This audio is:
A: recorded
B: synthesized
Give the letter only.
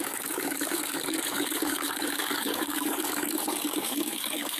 B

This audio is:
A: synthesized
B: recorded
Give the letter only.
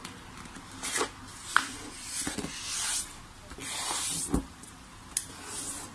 B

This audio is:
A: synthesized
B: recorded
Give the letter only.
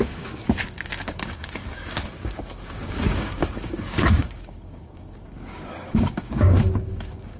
A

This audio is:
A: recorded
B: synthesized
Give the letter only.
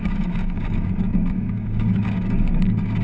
B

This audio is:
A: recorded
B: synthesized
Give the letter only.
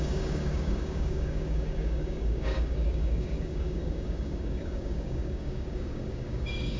B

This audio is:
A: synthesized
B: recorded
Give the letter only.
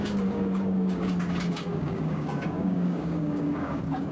A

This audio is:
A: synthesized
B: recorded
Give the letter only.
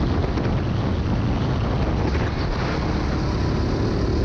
B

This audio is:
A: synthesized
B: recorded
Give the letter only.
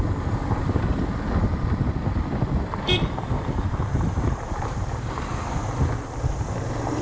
B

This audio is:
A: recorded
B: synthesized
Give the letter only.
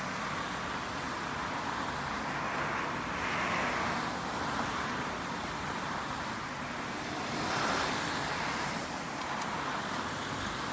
A